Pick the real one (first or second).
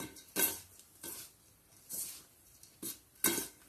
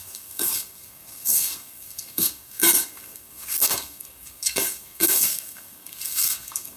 first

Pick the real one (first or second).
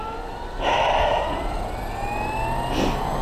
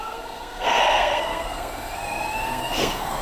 first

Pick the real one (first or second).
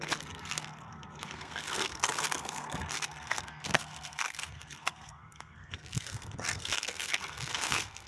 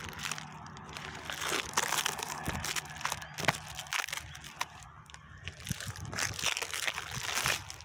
second